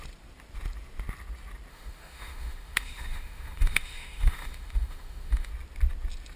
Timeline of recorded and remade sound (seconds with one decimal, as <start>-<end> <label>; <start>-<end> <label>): 0.0-1.7 recorded; 1.7-5.5 remade; 5.5-6.4 recorded